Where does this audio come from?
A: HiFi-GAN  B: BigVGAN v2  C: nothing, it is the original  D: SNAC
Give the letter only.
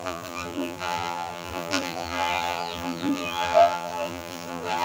B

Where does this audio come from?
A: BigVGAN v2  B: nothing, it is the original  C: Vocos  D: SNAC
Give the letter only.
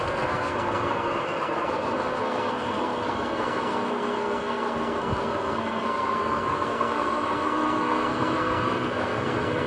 D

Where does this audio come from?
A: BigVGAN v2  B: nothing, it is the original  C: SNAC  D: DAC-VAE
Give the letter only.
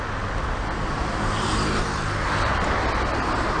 B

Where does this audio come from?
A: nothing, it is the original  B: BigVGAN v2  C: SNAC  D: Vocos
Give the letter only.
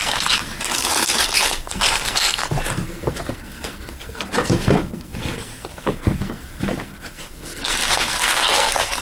C